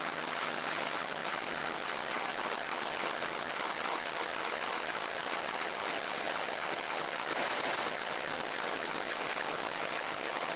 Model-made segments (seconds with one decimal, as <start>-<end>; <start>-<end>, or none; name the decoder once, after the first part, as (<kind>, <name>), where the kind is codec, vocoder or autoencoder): 0.0-7.3 (vocoder, HiFi-GAN); 7.9-10.6